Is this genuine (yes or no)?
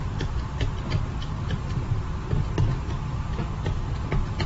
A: yes